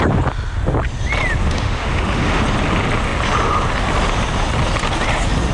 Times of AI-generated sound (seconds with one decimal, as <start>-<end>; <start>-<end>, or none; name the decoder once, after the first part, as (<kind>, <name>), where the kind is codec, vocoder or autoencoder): 1.4-2.4 (autoencoder, DAC-VAE)

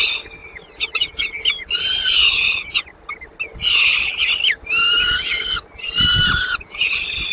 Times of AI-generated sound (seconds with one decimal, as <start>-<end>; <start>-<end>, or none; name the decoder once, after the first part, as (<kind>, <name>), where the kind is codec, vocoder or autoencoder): 0.4-1.2 (vocoder, BigVGAN v2)

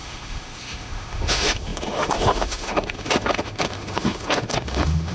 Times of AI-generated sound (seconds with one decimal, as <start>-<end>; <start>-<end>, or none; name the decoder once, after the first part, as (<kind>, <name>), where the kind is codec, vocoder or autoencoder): 0.0-5.1 (autoencoder, DAC-VAE)